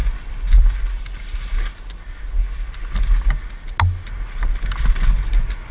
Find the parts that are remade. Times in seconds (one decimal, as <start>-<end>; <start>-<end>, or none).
none